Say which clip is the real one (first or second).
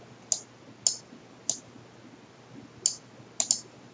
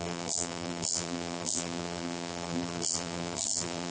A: first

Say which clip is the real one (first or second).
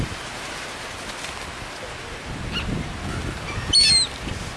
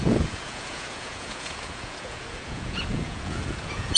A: first